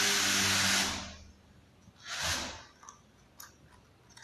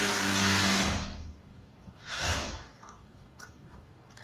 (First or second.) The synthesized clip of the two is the second